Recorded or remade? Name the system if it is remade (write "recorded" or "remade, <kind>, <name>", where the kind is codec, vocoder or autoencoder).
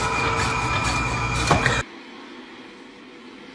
recorded